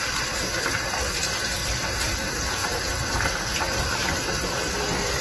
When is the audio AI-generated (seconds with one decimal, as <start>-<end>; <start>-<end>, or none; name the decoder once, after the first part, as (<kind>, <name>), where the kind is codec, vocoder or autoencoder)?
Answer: 0.0-2.6 (vocoder, BigVGAN v2); 4.1-5.2